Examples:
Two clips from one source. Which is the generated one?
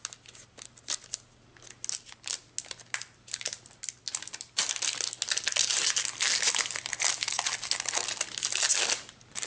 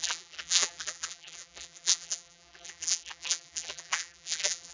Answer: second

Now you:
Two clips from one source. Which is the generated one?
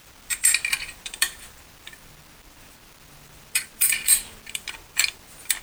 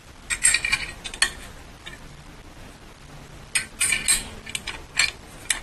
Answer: first